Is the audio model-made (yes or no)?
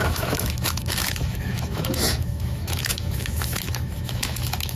yes